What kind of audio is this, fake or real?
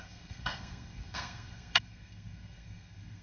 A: fake